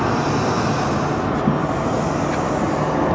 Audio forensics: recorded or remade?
recorded